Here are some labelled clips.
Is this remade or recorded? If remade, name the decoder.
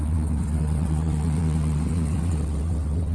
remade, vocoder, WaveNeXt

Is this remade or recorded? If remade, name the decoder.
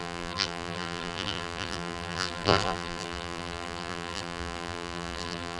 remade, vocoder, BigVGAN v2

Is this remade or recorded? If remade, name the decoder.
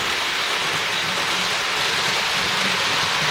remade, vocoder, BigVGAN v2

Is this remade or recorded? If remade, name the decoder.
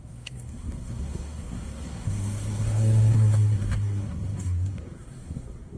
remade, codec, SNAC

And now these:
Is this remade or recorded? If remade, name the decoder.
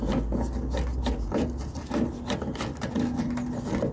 recorded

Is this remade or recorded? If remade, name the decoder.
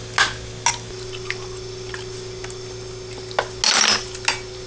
recorded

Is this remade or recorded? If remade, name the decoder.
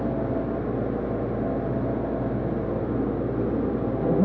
recorded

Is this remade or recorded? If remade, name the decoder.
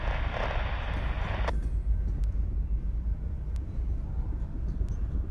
recorded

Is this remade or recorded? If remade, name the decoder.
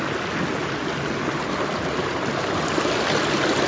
recorded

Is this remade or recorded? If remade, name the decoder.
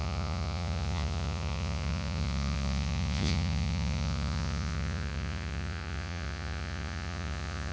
remade, vocoder, Vocos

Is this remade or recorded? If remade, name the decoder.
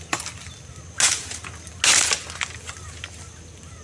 recorded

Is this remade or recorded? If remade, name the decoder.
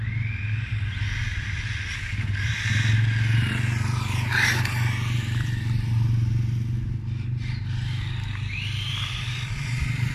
recorded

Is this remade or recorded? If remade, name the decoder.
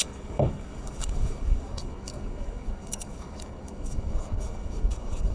remade, codec, DAC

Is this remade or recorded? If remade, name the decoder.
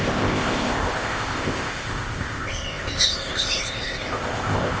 remade, codec, ZipCodec